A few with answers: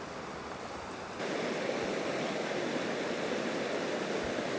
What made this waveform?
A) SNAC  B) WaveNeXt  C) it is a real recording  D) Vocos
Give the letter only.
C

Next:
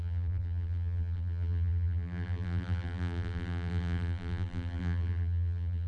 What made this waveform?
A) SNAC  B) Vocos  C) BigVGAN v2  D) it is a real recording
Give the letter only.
C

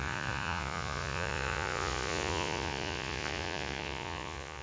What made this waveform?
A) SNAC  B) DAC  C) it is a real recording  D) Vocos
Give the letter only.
D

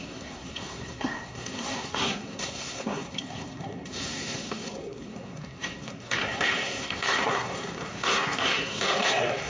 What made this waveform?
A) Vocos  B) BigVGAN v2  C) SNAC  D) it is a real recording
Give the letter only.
C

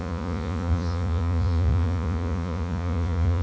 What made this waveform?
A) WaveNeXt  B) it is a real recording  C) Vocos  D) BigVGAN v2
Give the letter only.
C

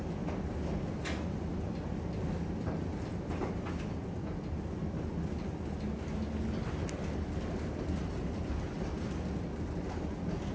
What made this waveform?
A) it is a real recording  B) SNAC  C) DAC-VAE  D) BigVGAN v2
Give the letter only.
A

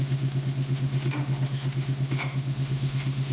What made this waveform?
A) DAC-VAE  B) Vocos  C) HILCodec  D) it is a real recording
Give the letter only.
A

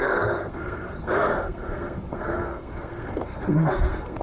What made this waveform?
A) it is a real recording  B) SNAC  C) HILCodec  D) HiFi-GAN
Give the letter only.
B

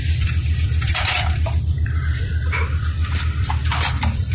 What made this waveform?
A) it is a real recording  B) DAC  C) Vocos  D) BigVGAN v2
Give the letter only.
D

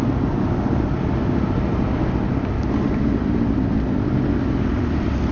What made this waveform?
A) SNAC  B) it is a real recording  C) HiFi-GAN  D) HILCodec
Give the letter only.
B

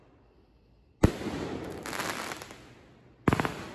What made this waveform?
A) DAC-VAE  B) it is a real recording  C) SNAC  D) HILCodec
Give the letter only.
B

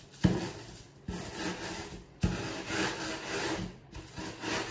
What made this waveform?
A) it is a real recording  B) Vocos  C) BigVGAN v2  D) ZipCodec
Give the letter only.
A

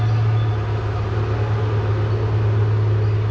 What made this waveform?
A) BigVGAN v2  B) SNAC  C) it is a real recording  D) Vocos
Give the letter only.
C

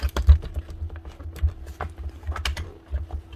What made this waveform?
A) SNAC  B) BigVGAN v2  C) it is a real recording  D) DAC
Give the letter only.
C